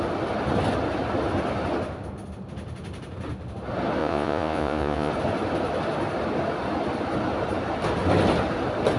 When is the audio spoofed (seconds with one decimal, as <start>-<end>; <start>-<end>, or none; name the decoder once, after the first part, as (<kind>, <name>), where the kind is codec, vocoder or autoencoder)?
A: 4.0-5.1 (vocoder, Vocos)